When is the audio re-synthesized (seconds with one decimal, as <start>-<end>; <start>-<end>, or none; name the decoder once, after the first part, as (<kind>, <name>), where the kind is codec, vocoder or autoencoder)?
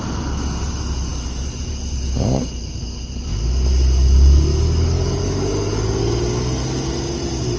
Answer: 4.5-6.0 (codec, DAC)